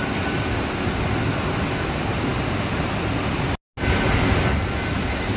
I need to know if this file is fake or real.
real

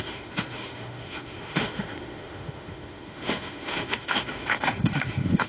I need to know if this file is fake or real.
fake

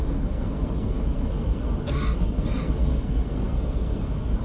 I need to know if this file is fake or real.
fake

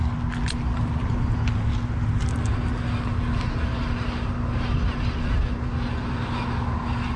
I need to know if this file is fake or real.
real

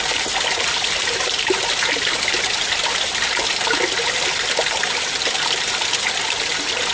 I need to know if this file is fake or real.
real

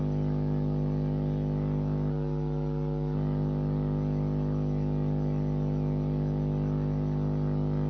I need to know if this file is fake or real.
real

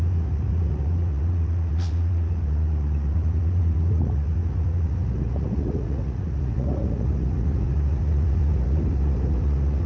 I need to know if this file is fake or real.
fake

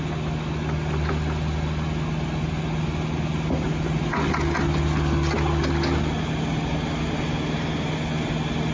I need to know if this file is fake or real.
real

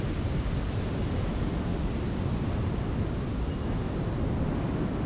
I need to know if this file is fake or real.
real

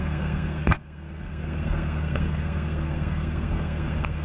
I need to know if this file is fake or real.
fake